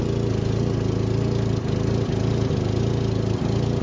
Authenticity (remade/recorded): recorded